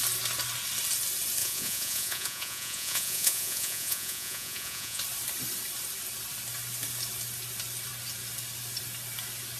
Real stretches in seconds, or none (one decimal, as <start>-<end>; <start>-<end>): 0.0-1.4; 5.0-9.6